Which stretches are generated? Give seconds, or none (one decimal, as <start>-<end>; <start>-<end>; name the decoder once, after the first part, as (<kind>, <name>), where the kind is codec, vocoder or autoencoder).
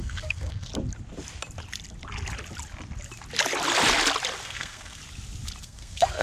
0.0-0.7 (codec, SNAC); 4.4-5.0; 5.6-6.2